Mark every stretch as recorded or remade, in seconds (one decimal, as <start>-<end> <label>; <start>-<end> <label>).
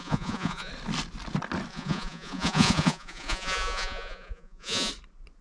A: 0.0-0.7 remade; 0.7-1.7 recorded; 1.7-4.9 remade; 4.9-5.4 recorded